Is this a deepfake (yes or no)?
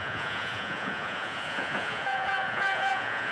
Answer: yes